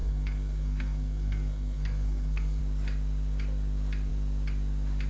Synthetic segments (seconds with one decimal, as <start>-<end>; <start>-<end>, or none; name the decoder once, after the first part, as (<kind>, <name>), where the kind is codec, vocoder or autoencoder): 0.0-2.6 (codec, SNAC)

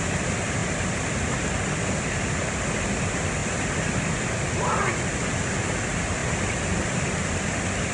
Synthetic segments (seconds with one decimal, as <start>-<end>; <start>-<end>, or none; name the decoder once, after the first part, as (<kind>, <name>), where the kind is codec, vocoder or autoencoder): none

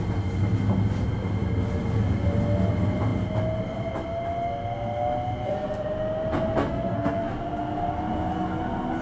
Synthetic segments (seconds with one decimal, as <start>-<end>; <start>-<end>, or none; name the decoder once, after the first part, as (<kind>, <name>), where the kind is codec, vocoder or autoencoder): 6.6-7.3 (codec, SNAC)